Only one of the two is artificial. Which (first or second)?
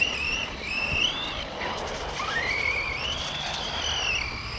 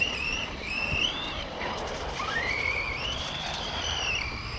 second